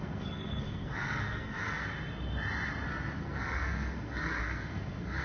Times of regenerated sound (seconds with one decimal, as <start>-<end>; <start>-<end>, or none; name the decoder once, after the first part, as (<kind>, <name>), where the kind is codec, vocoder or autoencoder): 0.0-1.9 (codec, SNAC); 3.2-5.2